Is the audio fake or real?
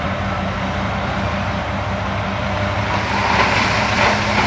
fake